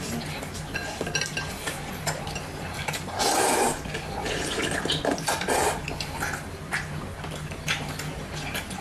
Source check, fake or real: real